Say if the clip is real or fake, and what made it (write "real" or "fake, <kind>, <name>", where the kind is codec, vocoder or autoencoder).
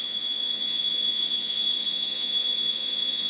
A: fake, vocoder, Vocos